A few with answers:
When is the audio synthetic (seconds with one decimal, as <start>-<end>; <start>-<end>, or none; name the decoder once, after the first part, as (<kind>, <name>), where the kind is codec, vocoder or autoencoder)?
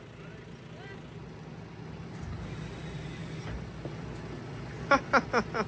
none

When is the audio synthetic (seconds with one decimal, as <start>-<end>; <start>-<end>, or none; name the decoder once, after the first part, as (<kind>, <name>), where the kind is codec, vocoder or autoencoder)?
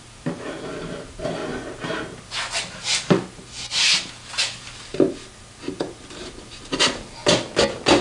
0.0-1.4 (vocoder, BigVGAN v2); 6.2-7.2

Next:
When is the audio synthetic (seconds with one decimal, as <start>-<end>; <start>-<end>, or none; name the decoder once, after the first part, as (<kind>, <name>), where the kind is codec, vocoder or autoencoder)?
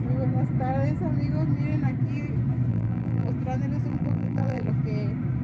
2.7-3.3 (vocoder, BigVGAN v2); 3.9-4.7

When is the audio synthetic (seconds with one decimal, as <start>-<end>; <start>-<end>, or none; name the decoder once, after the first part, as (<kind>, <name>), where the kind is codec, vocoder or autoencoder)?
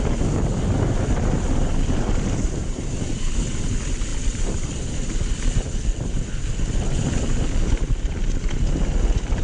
none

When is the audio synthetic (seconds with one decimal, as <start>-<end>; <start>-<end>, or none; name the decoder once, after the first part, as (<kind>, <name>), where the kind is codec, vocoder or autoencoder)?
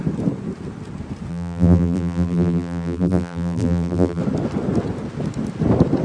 1.3-4.2 (vocoder, BigVGAN v2)